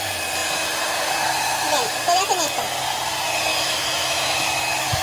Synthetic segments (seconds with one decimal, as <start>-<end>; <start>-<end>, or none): 3.5-5.0